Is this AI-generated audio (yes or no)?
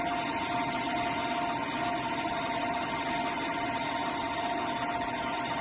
no